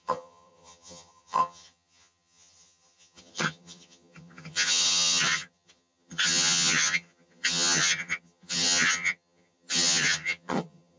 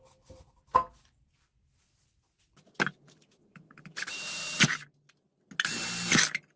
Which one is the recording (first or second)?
second